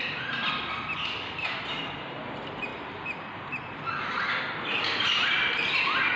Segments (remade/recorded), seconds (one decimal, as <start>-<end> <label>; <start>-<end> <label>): 0.0-1.4 recorded; 1.4-2.3 remade; 2.3-6.2 recorded